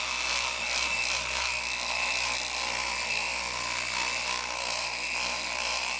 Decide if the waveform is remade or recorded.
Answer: recorded